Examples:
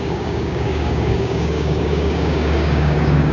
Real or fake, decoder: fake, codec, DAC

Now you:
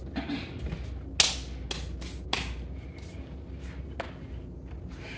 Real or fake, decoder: real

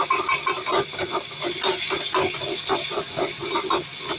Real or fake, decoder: real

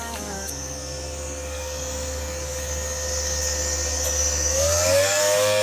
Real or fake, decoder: fake, codec, DAC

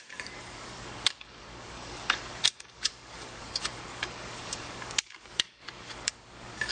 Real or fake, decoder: fake, codec, DAC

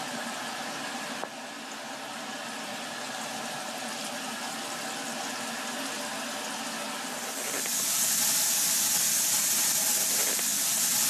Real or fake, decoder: real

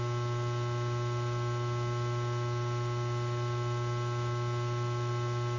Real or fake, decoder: real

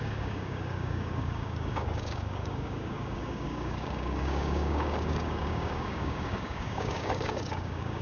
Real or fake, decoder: fake, codec, DAC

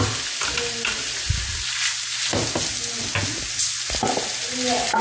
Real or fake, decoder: real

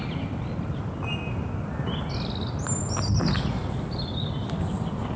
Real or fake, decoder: real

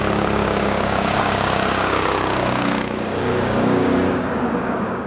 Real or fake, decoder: fake, codec, DAC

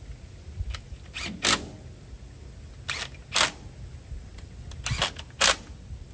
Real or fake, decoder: real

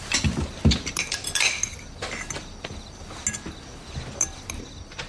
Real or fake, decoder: real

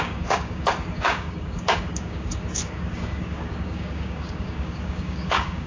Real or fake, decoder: fake, codec, DAC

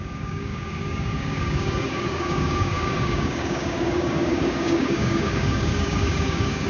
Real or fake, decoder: fake, codec, DAC